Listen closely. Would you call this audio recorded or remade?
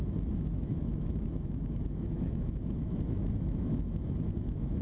remade